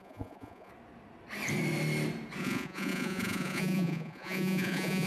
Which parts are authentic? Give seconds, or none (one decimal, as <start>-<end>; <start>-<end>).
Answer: 0.7-2.4